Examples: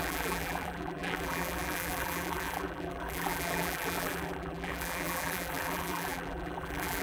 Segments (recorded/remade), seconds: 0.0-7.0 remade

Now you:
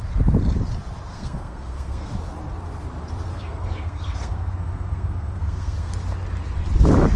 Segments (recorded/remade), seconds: 0.0-1.1 recorded; 1.1-2.1 remade; 2.1-3.3 recorded; 3.3-5.9 remade; 5.9-7.2 recorded

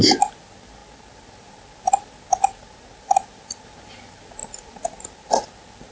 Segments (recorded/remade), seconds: 0.0-5.9 recorded

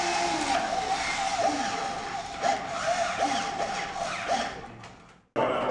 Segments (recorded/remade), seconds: 0.0-5.7 recorded

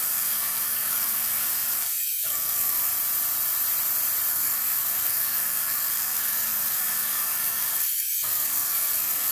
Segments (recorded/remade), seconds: 0.0-2.9 remade; 2.9-4.3 recorded; 4.3-9.3 remade

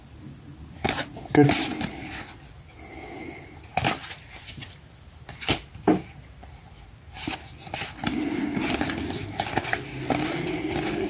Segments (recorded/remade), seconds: 0.0-11.1 recorded

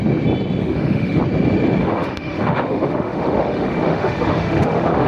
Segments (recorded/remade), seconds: 0.0-0.6 recorded; 0.6-1.2 remade; 1.2-1.8 recorded; 1.8-5.1 remade